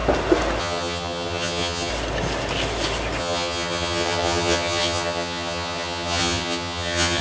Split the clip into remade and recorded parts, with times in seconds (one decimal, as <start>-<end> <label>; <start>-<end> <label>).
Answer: 0.0-0.6 recorded; 0.6-1.9 remade; 1.9-3.2 recorded; 3.2-7.2 remade

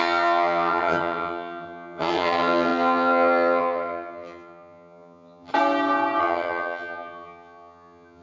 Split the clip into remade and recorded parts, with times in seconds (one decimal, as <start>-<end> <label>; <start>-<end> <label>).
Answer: 0.0-5.5 remade; 5.5-6.2 recorded; 6.2-8.2 remade